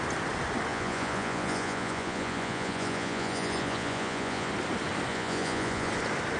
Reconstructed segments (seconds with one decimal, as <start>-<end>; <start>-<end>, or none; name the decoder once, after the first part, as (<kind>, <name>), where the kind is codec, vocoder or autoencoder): 0.7-4.5 (vocoder, Vocos); 5.1-5.9